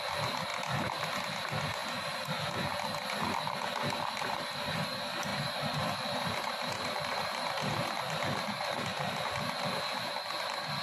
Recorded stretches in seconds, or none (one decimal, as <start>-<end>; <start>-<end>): 0.0-5.3; 10.1-10.8